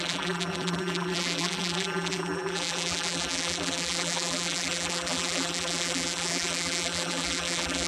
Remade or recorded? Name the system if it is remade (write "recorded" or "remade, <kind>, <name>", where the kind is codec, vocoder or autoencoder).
remade, vocoder, BigVGAN v2